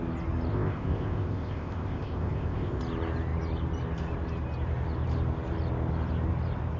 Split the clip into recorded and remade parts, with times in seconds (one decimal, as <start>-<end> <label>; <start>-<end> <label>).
0.0-0.5 recorded; 0.5-2.8 remade; 2.8-6.8 recorded